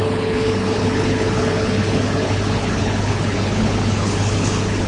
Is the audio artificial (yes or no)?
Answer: yes